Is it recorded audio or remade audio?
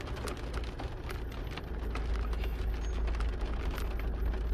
recorded